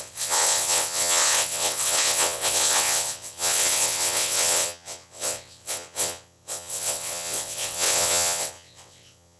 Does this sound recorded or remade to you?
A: remade